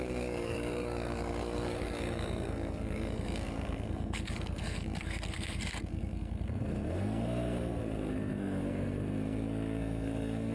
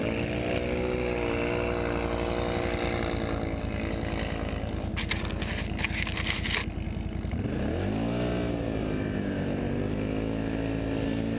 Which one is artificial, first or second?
first